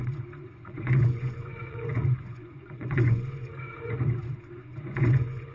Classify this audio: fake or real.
fake